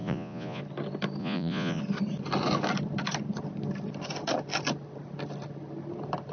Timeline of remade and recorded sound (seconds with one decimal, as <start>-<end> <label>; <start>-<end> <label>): 0.0-0.6 remade; 0.6-1.2 recorded; 1.2-1.8 remade; 1.8-6.3 recorded